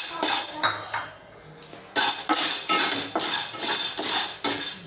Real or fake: real